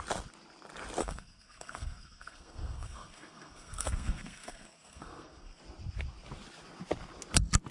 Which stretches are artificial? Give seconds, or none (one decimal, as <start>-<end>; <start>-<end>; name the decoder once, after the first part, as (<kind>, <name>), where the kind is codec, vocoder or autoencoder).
1.0-5.6 (codec, SNAC)